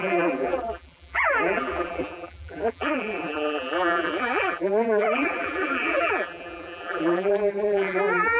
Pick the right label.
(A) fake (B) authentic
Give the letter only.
A